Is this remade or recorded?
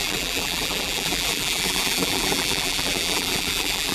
remade